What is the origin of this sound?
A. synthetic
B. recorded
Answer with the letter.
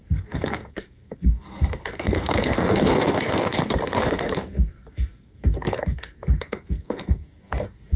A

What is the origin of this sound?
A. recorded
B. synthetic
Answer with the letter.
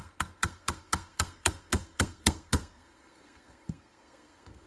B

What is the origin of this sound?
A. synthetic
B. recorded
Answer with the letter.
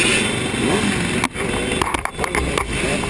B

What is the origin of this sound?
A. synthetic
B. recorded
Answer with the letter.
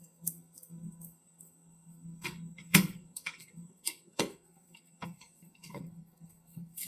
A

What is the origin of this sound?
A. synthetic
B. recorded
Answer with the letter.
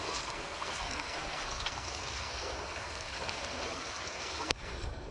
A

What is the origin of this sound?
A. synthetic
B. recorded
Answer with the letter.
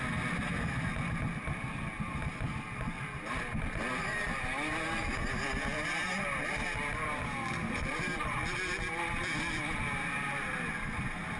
B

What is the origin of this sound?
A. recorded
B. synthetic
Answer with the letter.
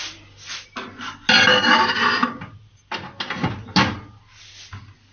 A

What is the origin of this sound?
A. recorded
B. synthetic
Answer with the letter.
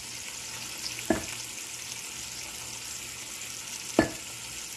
A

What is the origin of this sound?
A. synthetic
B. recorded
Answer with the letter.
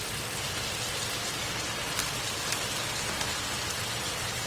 B